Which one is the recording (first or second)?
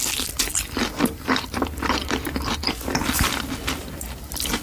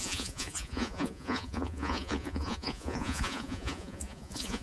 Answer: first